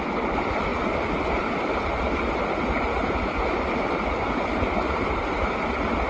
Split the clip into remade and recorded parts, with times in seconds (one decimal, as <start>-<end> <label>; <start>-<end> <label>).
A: 0.0-6.1 recorded